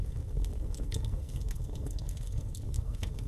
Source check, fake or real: fake